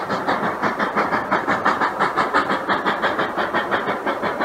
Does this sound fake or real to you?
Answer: real